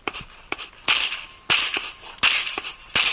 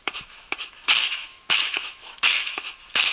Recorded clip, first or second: first